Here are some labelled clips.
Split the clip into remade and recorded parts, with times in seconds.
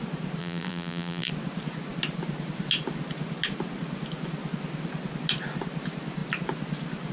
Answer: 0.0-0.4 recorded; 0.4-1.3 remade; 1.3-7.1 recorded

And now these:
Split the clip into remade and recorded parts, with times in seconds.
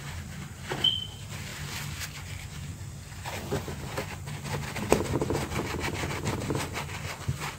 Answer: 0.0-2.7 remade; 2.7-7.6 recorded